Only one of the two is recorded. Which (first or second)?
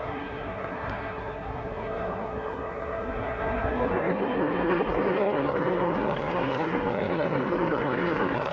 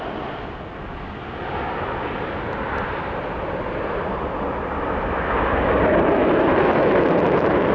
second